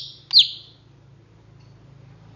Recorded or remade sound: recorded